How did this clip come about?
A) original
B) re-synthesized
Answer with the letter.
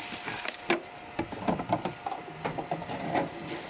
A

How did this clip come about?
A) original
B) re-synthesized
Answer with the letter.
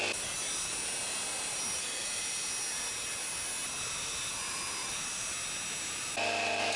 A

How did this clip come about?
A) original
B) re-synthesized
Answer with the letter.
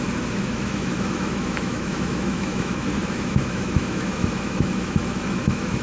B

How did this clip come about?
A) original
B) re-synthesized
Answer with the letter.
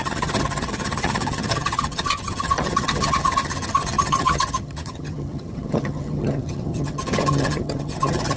B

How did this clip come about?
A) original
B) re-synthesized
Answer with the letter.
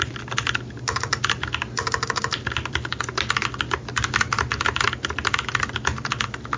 A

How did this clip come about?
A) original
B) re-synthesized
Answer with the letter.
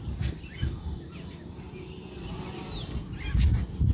A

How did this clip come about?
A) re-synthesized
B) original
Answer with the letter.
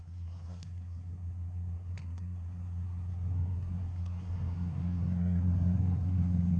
A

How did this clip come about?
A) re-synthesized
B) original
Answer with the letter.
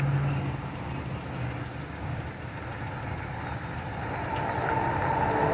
B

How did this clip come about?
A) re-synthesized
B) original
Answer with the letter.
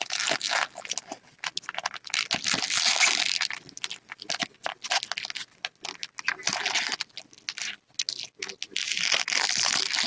B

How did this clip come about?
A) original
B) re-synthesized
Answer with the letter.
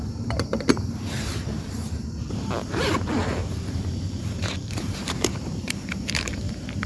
B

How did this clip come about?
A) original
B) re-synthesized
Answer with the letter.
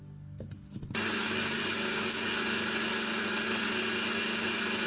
A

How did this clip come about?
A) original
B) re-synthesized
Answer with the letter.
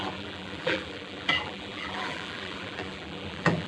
B